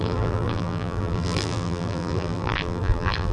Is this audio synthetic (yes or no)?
yes